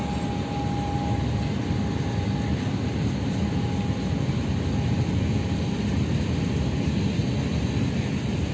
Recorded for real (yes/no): yes